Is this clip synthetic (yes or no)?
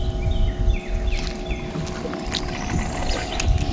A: no